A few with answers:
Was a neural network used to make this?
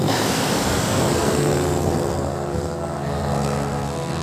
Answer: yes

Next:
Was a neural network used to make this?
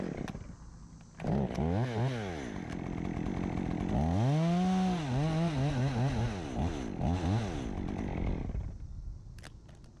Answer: no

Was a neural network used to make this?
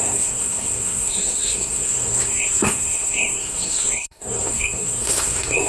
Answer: yes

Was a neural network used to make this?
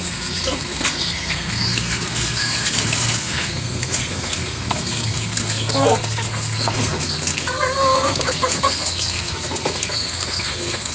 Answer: yes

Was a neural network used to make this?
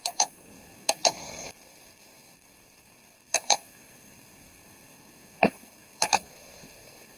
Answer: yes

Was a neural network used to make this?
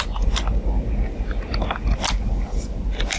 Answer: no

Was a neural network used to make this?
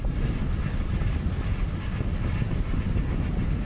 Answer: no